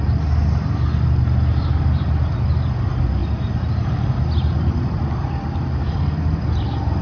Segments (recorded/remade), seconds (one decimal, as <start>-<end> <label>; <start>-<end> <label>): 0.0-7.0 recorded